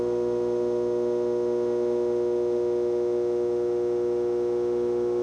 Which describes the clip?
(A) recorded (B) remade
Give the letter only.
B